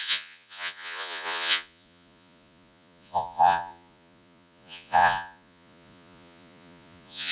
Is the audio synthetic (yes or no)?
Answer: yes